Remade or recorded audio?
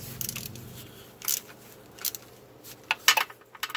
recorded